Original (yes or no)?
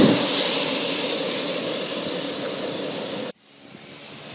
yes